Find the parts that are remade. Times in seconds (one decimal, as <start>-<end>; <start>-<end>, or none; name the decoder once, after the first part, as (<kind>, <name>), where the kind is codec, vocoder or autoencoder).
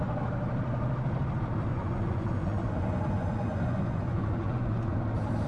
1.7-5.0 (vocoder, Vocos)